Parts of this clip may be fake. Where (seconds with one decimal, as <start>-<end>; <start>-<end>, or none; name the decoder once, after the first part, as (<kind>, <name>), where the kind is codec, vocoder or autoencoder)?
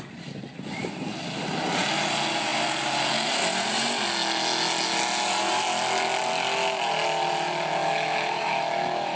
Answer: 7.8-9.2 (autoencoder, DAC-VAE)